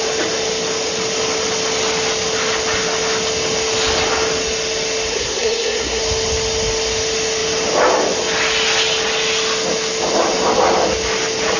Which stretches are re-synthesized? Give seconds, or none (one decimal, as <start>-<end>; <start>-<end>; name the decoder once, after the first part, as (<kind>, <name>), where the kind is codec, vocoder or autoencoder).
5.1-6.0 (codec, SNAC)